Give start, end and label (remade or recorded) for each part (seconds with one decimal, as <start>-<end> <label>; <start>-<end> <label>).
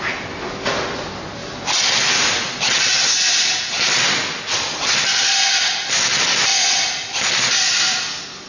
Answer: 0.0-8.5 recorded